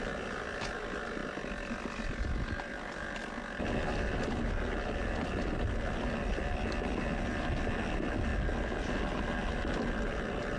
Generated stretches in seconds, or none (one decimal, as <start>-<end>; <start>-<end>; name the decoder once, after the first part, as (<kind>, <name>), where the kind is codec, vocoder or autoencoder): none